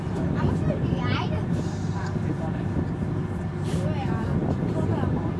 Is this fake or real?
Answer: real